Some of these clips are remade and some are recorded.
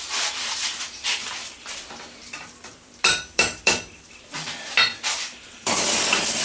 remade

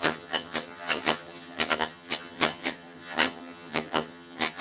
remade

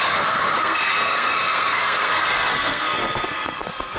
remade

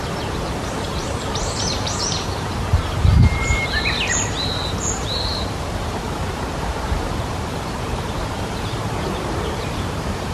remade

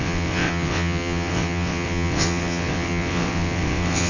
remade